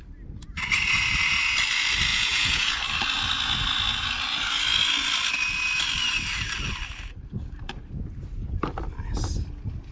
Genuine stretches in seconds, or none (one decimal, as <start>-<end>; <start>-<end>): 0.0-2.1; 2.7-9.9